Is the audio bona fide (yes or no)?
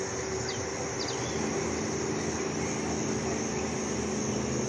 yes